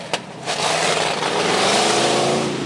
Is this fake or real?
real